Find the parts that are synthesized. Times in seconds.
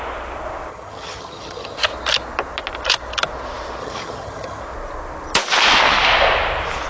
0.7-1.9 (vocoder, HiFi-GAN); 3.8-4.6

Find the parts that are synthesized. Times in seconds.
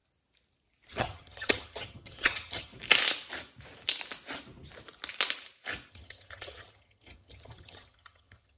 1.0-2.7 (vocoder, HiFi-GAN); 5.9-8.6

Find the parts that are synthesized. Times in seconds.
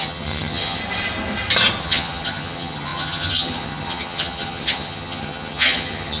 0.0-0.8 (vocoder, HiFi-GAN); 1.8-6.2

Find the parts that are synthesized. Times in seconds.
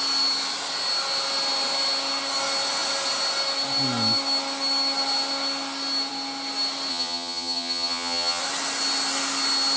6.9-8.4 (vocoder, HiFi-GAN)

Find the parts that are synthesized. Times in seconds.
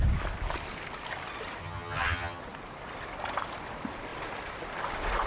1.6-2.4 (vocoder, HiFi-GAN)